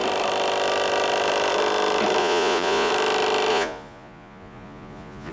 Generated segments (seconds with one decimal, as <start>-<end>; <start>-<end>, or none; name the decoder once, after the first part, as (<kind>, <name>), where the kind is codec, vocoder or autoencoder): 2.2-2.9 (vocoder, Vocos); 3.5-5.3